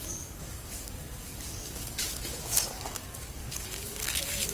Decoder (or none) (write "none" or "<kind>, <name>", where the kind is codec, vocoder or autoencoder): codec, DAC